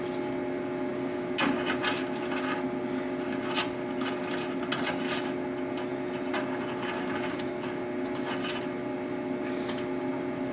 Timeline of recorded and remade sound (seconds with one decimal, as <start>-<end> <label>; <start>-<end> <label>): 0.0-10.5 recorded